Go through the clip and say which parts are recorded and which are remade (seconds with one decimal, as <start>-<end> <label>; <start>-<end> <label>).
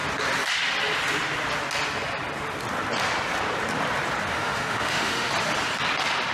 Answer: 0.0-4.3 recorded; 4.3-5.3 remade; 5.3-6.3 recorded